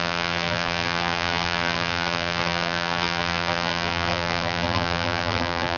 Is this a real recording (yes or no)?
no